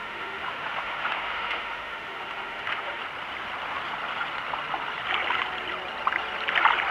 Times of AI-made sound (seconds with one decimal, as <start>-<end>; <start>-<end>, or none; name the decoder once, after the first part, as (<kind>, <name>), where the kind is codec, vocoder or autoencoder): 0.0-3.0 (autoencoder, DAC-VAE)